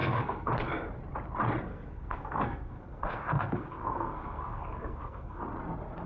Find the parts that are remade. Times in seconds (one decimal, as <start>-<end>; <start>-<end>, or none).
0.0-0.5; 1.7-5.4